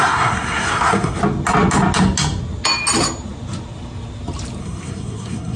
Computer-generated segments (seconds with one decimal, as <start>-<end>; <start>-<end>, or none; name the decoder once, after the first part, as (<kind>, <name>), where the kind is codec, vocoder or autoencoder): 0.0-1.2 (codec, SNAC); 4.6-5.6